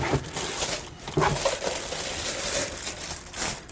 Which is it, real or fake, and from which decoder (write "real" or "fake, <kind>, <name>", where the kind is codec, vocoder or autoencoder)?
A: real